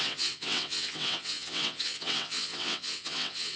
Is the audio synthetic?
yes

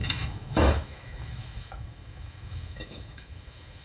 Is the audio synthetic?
yes